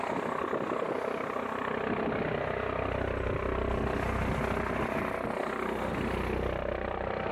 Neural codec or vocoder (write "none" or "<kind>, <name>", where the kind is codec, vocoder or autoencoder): none